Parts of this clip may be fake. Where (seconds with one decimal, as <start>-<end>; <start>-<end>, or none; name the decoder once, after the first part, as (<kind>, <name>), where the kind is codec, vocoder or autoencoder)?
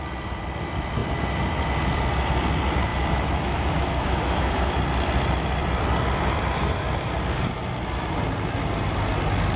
2.9-4.8 (autoencoder, DAC-VAE)